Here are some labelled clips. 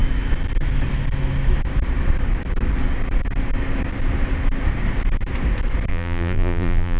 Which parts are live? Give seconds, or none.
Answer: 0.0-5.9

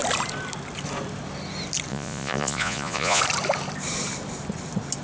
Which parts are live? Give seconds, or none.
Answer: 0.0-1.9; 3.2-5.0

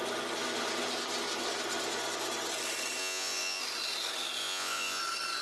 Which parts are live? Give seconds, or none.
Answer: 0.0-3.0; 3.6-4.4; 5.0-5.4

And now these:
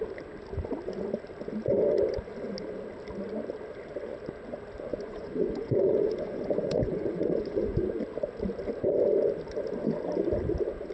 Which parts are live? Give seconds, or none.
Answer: 0.0-4.9; 7.8-10.9

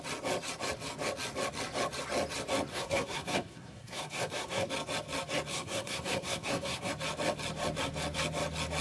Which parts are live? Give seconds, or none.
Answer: 0.0-2.7; 4.7-5.5; 6.9-8.8

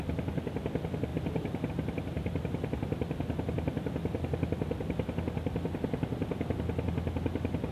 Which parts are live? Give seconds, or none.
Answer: 0.0-7.7

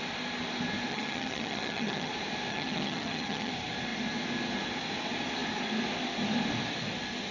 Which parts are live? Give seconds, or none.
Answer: 0.0-0.9; 2.1-2.5; 3.5-7.3

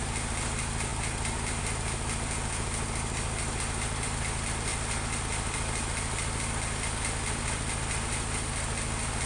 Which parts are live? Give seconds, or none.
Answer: 0.0-9.3